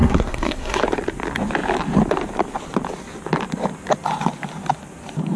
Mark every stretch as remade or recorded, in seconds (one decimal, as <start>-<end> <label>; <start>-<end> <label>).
0.0-0.8 remade; 0.8-5.4 recorded